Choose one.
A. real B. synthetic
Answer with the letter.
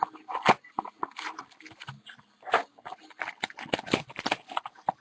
A